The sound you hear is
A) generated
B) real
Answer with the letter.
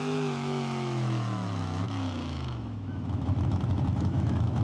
A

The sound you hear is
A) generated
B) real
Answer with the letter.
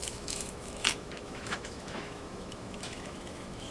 A